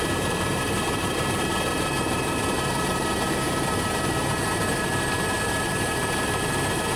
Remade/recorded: remade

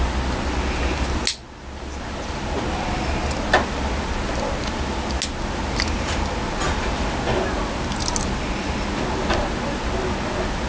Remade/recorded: recorded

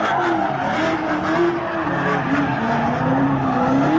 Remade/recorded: recorded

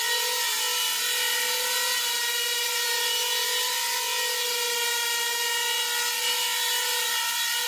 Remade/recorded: recorded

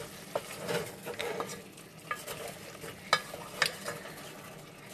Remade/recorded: recorded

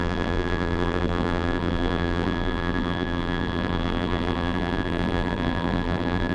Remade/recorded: remade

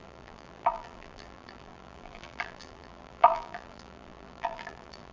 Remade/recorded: remade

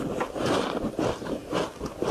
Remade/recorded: remade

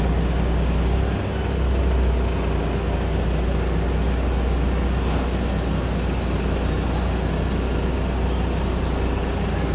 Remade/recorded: recorded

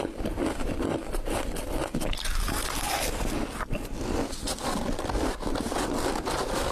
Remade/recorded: remade